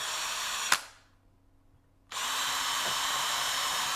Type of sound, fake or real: real